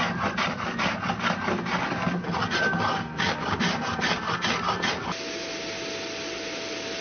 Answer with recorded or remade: recorded